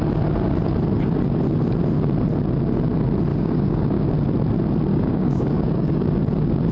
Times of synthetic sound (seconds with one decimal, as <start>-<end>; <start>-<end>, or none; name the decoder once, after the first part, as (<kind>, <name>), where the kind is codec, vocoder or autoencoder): 3.3-4.1 (codec, DAC); 4.9-6.1